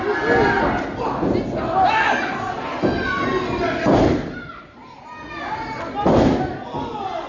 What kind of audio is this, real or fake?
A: real